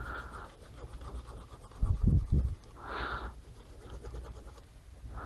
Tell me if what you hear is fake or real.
real